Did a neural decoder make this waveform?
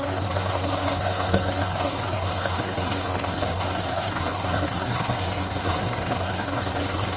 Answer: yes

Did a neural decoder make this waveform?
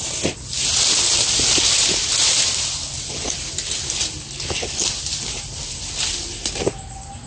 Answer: no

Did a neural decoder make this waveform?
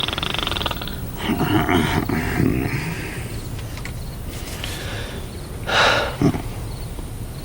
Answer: yes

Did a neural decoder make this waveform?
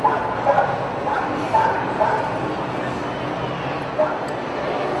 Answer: no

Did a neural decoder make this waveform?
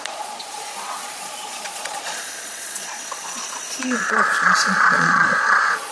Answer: yes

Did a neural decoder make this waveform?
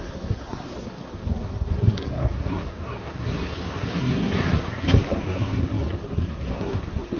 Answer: yes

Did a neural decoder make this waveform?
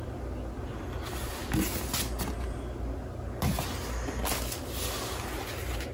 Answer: no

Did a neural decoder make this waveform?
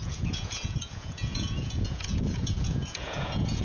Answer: yes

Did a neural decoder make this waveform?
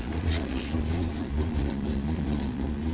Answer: yes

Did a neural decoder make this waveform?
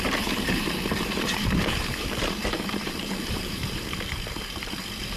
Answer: yes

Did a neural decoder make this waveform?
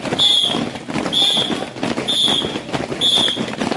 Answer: no